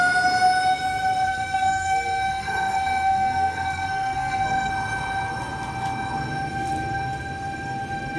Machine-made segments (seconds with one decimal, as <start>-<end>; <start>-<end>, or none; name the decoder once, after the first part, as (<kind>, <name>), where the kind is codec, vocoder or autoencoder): 1.3-4.7 (codec, SNAC)